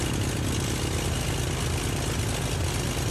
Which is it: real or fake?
real